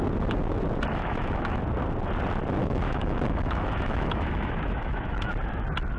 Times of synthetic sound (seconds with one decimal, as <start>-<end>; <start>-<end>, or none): 0.9-1.6; 2.6-5.3